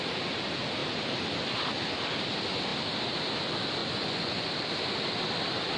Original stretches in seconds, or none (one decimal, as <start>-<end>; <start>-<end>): 0.0-3.8; 4.5-5.8